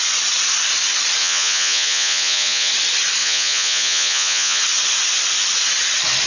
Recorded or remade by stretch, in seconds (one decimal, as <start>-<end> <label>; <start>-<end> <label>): 0.0-1.2 recorded; 1.2-2.7 remade; 2.7-3.2 recorded; 3.2-4.6 remade; 4.6-6.3 recorded